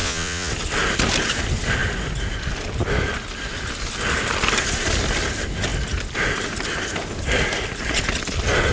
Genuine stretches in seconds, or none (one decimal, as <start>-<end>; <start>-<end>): 0.5-8.7